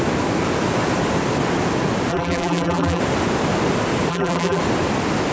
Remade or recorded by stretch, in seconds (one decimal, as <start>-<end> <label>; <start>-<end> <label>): 0.0-2.1 recorded; 2.1-3.0 remade; 3.0-4.1 recorded; 4.1-4.6 remade; 4.6-5.3 recorded